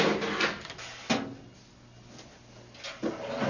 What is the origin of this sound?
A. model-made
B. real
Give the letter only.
B